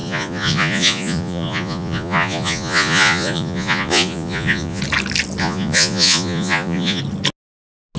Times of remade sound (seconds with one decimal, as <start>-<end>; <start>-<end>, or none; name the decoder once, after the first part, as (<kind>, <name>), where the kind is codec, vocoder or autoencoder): 0.0-4.8 (vocoder, Vocos); 5.4-7.0